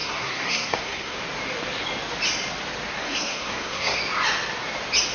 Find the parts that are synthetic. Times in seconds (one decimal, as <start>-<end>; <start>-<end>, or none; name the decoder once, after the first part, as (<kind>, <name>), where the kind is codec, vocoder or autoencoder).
0.0-1.2 (codec, SNAC); 3.0-4.0